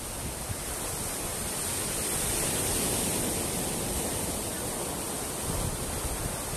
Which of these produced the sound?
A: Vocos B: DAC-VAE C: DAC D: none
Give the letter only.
D